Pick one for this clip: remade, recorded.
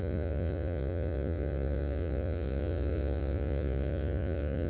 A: remade